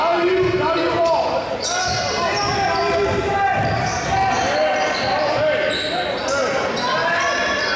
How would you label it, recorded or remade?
recorded